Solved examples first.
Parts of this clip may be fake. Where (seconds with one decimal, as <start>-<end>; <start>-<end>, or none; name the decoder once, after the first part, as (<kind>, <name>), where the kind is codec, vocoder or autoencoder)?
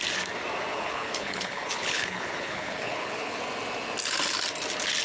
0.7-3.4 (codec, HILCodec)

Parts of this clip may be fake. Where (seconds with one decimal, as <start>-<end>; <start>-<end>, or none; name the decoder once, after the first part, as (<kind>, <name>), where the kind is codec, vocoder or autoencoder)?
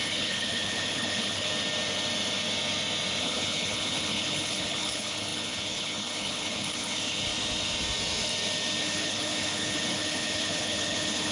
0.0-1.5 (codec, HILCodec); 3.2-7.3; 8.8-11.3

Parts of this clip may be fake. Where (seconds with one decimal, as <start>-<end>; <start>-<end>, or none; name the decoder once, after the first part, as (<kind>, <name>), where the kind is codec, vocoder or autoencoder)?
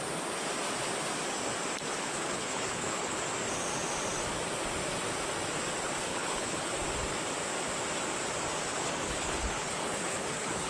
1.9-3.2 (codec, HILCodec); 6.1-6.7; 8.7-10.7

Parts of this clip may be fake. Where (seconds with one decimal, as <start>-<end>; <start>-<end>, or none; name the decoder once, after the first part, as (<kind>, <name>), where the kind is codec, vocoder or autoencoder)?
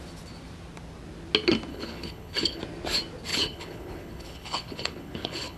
1.7-2.6 (codec, HILCodec); 3.3-5.6